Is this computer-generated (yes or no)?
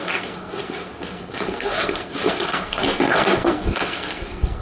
yes